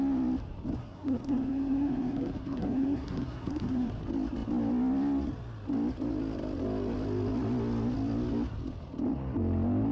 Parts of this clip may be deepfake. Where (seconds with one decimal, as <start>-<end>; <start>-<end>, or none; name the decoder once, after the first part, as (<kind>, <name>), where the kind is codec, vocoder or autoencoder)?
0.8-3.9 (codec, SNAC)